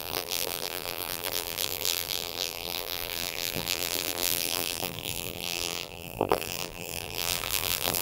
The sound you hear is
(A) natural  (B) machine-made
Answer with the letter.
B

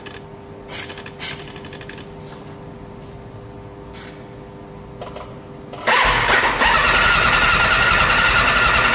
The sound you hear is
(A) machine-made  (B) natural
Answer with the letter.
B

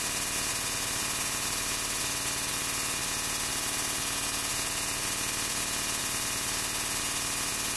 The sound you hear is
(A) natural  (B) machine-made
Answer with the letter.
A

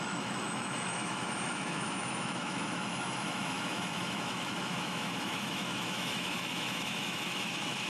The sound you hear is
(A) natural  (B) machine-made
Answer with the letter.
B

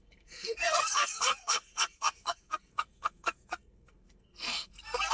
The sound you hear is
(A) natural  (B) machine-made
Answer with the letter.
B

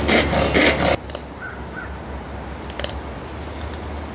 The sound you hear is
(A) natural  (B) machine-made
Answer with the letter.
A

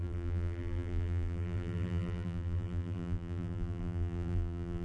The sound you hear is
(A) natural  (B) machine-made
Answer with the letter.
B